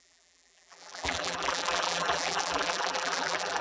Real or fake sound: fake